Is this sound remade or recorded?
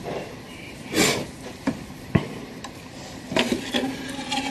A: recorded